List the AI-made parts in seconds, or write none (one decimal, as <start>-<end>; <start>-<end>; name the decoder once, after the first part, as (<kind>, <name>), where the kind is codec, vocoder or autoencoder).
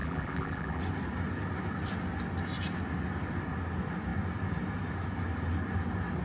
0.0-0.8 (vocoder, BigVGAN v2)